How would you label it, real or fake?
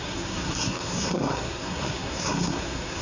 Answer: fake